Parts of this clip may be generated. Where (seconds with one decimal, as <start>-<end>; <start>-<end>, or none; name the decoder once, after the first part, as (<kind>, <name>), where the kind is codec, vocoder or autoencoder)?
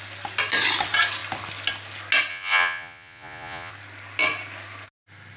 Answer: 2.3-3.7 (vocoder, Vocos)